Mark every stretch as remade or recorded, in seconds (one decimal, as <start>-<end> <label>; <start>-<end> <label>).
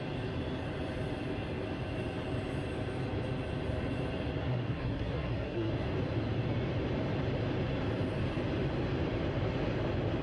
0.0-4.4 recorded; 4.4-5.7 remade; 5.7-10.2 recorded